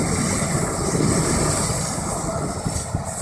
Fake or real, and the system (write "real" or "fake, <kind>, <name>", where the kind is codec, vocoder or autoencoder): real